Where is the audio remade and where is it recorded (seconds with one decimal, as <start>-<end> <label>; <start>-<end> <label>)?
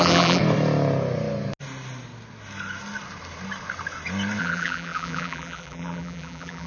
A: 0.0-0.4 remade; 0.4-4.4 recorded; 4.4-6.7 remade